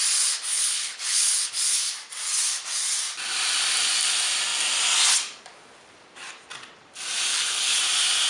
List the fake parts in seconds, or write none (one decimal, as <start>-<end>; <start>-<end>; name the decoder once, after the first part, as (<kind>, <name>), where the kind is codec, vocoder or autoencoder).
0.5-1.5 (codec, HILCodec); 7.3-7.8